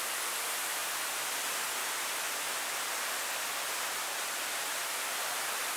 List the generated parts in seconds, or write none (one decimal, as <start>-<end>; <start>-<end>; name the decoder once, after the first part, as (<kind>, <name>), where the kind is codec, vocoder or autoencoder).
none